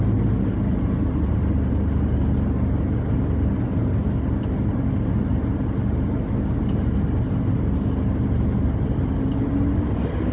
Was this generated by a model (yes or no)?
no